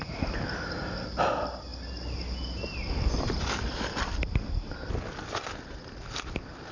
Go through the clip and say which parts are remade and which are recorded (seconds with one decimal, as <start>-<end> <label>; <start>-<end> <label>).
0.0-6.7 recorded